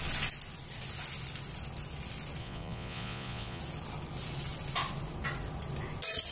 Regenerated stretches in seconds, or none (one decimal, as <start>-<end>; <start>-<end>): 2.4-3.6

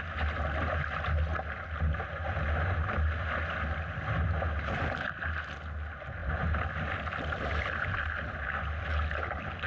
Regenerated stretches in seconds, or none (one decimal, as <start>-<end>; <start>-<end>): none

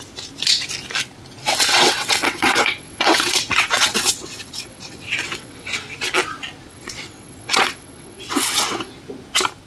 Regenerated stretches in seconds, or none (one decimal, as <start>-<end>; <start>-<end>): 1.4-5.8; 6.7-8.9

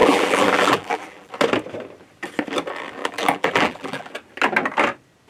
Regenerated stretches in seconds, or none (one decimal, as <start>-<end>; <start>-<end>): 0.0-1.3; 3.0-4.1